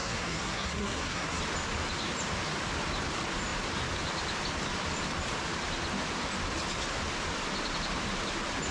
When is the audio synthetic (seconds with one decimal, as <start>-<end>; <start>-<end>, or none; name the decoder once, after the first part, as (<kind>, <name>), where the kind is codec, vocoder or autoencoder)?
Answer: 0.0-1.4 (codec, SNAC)